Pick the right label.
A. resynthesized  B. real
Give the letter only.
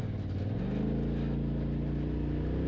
B